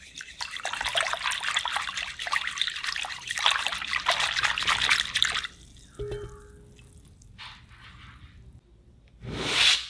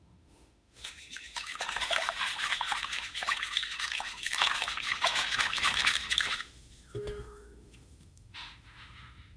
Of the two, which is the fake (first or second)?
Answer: second